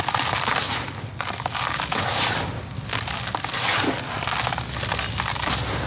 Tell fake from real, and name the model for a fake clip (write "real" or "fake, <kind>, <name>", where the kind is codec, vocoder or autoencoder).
real